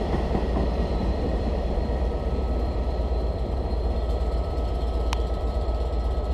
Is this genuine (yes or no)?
no